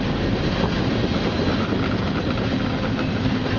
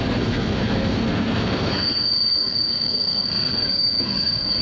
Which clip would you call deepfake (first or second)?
second